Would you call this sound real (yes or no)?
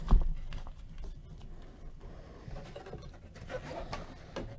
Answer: yes